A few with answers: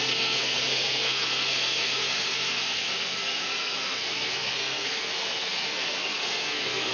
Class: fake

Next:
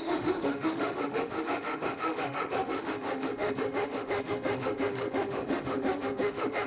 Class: fake